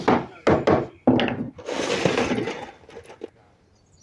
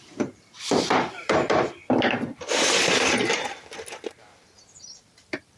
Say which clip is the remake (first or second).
second